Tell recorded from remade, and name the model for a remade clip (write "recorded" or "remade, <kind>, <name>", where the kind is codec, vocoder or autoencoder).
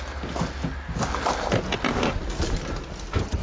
recorded